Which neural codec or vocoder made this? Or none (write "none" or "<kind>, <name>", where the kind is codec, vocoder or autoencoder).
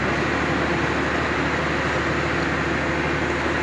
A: none